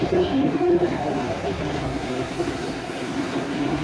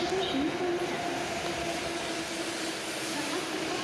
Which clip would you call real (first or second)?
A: second